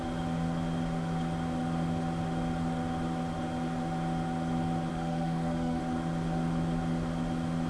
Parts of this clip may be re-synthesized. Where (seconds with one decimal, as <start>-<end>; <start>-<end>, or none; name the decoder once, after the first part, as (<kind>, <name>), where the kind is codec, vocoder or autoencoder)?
4.9-5.8 (autoencoder, DAC-VAE)